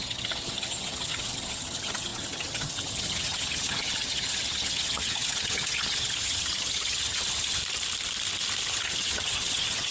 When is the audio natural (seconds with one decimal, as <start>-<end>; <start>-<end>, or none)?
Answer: 7.6-8.7